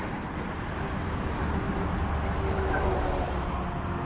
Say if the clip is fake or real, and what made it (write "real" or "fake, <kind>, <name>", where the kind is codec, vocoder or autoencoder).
real